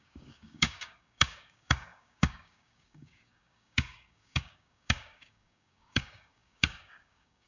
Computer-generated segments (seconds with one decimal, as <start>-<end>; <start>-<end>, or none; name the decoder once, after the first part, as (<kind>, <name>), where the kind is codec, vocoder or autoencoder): 0.0-7.5 (codec, DAC)